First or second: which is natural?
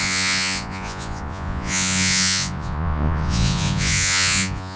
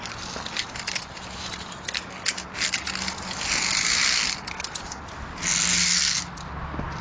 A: second